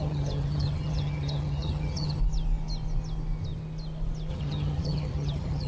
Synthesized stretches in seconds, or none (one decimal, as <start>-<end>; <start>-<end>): 0.0-2.2; 4.3-5.7